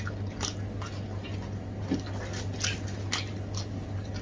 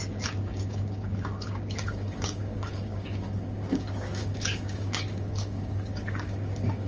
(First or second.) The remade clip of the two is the second